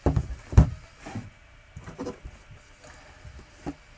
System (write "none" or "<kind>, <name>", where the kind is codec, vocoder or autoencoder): none